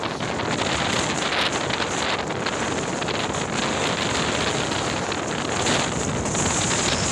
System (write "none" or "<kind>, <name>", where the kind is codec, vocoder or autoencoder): none